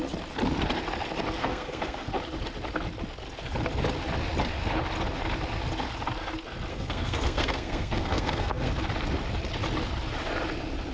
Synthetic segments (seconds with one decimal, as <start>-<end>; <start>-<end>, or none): 1.4-2.1; 6.7-8.7